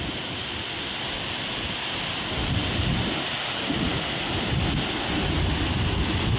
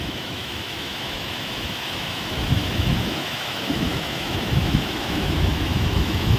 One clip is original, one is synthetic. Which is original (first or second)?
first